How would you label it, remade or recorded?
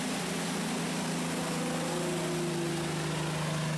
recorded